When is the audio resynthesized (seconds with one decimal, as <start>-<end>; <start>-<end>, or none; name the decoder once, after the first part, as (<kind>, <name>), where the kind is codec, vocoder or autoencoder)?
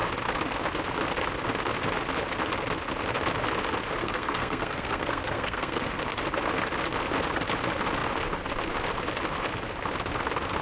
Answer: 4.0-6.0 (codec, SNAC)